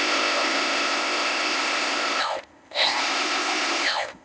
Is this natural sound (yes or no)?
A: no